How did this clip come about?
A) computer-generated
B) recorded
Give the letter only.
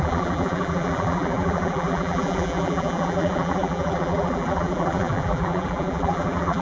A